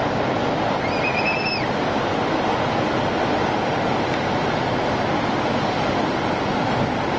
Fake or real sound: real